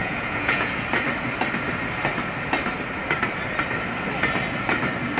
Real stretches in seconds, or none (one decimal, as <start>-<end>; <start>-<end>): 0.7-5.2